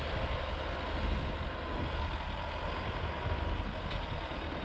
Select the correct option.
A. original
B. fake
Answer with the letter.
A